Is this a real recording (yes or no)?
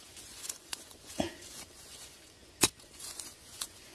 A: no